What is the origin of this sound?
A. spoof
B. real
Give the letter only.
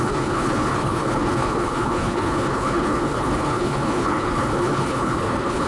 A